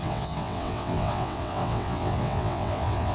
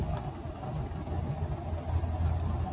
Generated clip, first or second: first